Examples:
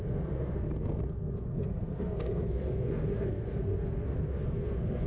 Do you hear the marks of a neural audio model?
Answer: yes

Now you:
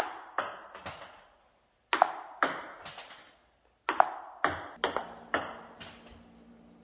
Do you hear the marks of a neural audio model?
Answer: no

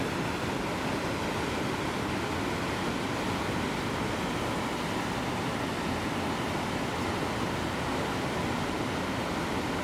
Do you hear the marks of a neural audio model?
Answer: no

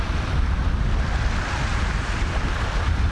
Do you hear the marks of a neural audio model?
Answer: no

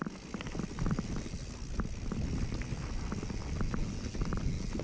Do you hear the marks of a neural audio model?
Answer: no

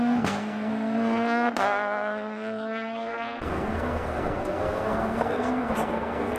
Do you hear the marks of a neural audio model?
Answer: yes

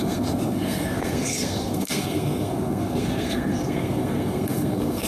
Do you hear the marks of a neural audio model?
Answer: yes